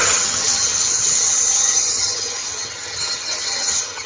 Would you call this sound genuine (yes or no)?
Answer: no